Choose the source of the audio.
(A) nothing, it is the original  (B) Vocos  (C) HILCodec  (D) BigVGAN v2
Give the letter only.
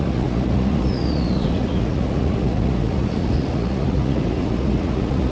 B